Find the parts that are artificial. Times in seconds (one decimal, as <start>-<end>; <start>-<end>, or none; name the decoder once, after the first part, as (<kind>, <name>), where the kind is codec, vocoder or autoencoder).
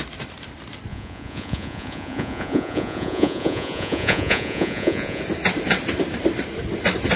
0.9-5.2 (vocoder, Vocos)